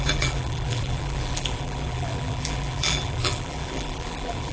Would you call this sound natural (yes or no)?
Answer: no